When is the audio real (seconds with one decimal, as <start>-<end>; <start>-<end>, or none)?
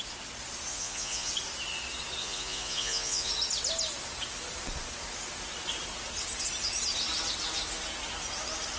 0.0-0.7; 1.3-2.2; 3.3-8.8